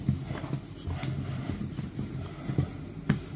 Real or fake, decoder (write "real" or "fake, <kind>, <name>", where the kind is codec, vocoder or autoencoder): real